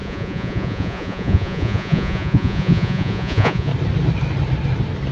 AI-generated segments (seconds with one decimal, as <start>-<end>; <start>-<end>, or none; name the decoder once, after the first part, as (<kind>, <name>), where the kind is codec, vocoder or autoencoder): 0.0-3.7 (vocoder, Vocos)